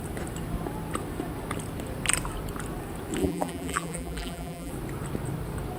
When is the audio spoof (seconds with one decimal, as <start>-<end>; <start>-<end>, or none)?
3.2-4.7